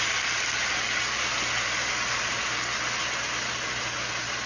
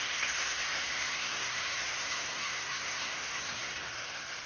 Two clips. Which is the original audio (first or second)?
first